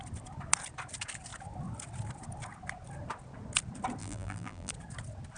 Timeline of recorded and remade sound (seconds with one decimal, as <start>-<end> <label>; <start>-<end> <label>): 0.0-4.0 recorded; 4.0-4.7 remade; 4.7-5.4 recorded